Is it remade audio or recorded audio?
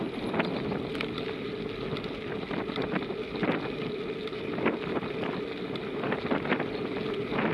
recorded